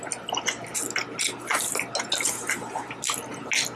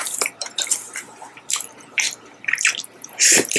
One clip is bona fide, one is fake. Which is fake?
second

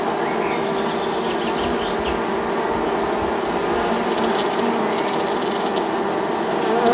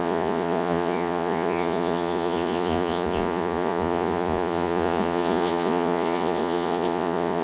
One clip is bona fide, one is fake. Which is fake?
second